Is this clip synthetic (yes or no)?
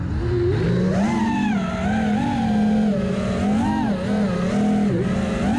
no